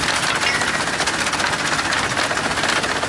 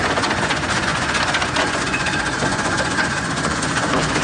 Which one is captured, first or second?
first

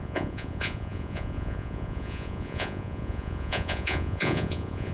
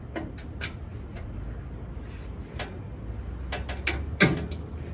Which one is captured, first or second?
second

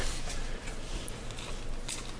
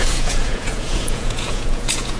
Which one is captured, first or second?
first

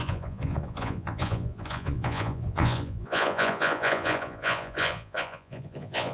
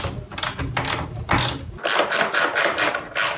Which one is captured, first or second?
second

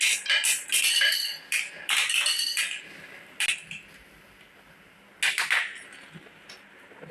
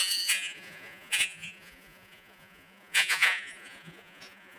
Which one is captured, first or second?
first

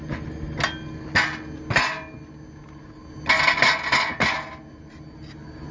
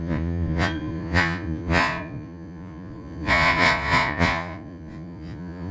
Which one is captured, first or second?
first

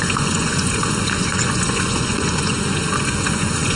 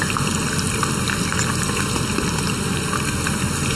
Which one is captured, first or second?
second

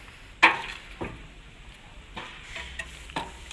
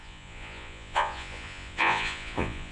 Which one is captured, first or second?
first